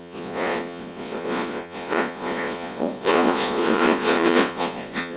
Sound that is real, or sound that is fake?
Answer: fake